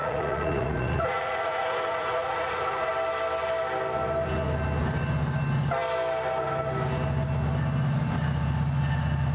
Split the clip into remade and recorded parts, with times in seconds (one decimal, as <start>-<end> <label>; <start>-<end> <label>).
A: 0.0-2.9 remade; 2.9-9.3 recorded